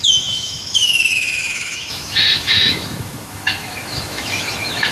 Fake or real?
fake